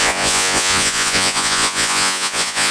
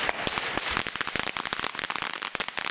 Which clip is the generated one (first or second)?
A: first